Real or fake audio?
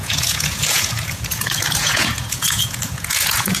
fake